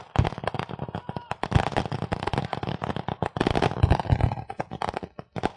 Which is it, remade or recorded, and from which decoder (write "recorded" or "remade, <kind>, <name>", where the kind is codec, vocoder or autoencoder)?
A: recorded